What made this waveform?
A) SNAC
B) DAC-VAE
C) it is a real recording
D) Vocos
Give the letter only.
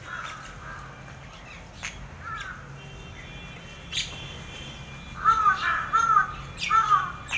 C